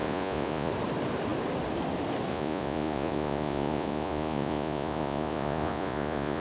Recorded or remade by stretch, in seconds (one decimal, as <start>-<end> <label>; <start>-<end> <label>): 0.0-0.7 remade; 0.7-2.3 recorded; 2.3-6.4 remade